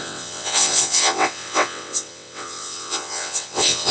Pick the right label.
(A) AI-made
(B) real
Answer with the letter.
A